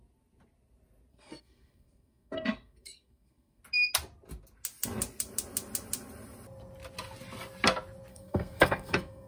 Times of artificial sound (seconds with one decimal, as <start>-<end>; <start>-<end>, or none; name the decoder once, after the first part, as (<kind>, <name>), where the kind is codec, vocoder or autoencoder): 1.1-3.6 (codec, SNAC); 8.1-9.3